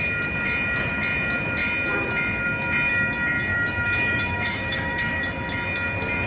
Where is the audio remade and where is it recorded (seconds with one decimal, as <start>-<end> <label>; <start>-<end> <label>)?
0.0-3.5 recorded; 3.5-5.2 remade; 5.2-6.3 recorded